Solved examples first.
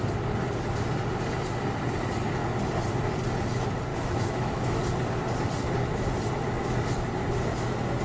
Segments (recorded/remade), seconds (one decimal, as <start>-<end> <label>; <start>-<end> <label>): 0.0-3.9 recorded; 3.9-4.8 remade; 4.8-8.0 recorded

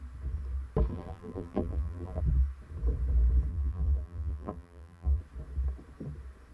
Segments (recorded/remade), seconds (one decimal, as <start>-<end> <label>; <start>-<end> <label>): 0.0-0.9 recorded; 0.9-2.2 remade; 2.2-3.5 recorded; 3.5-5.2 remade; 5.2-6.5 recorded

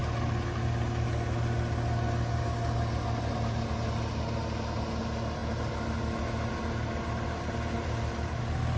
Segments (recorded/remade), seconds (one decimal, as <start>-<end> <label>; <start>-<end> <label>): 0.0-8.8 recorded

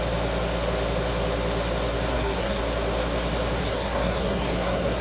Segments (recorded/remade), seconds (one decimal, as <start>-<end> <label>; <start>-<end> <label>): 0.0-2.1 recorded; 2.1-2.6 remade; 2.6-3.6 recorded; 3.6-5.0 remade